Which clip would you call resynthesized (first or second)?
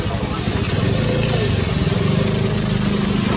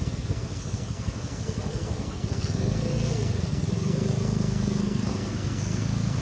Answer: second